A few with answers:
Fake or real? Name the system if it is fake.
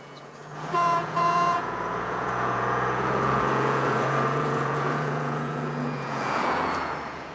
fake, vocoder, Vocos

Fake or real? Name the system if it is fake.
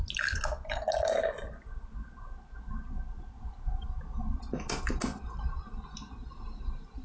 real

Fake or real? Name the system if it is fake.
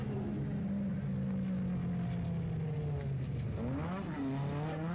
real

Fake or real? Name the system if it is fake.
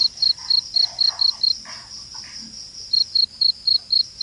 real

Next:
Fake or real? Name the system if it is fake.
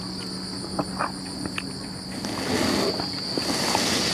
real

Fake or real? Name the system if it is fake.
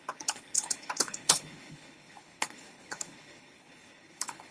fake, codec, HILCodec